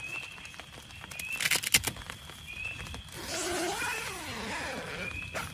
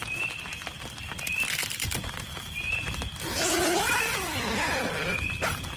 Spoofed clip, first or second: second